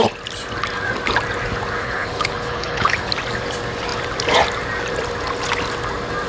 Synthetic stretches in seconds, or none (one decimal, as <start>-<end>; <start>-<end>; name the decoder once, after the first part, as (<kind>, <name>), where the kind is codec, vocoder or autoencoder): 1.8-3.1 (codec, HILCodec)